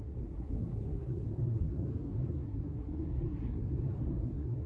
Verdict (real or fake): fake